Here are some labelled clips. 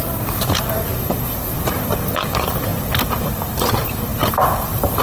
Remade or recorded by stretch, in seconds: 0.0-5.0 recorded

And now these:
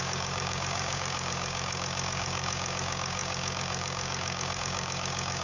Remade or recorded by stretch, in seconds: 0.0-5.4 remade